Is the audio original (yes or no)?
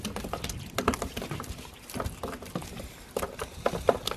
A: yes